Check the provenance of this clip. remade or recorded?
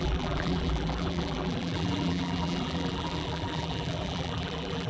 remade